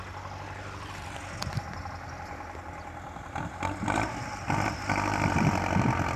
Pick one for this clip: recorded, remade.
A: recorded